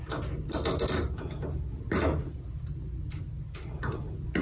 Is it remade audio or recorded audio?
recorded